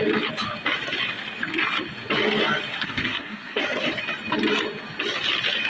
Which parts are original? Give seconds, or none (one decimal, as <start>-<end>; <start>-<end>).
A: 0.0-2.7; 3.6-5.7